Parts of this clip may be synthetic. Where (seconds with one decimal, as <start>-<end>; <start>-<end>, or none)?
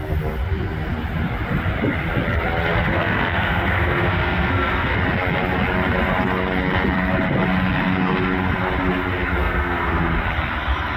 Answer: 2.9-5.0; 9.4-10.0